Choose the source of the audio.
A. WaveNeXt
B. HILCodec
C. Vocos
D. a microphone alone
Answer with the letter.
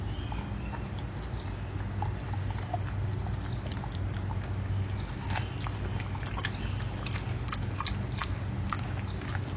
D